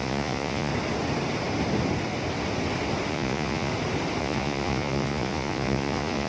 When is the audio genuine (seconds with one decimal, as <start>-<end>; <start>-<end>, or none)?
0.7-3.1; 3.7-4.2

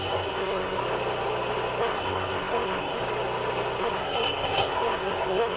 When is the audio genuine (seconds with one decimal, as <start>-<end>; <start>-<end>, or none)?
0.8-1.8; 3.0-3.8

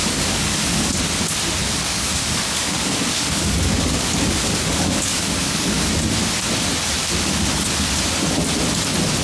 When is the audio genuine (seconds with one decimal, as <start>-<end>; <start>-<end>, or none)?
0.9-1.6; 5.9-7.0; 7.5-9.2